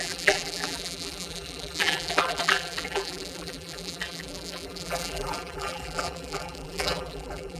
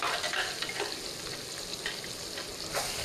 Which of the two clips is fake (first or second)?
first